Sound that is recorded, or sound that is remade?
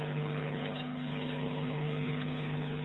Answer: remade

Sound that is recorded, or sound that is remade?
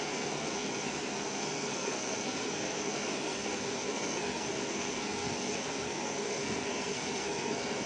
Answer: remade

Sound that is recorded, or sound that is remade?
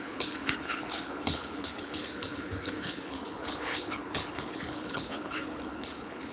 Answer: remade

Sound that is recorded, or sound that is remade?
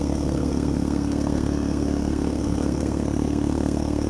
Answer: remade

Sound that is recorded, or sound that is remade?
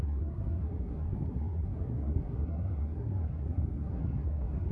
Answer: remade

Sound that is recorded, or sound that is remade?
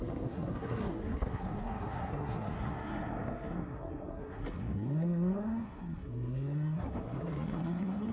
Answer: remade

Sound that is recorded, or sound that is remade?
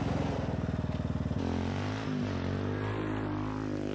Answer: recorded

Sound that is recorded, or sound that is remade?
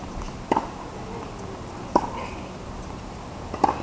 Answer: recorded